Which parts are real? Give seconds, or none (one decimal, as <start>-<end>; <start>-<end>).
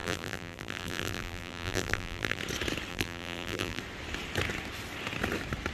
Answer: 2.4-2.9; 3.8-5.7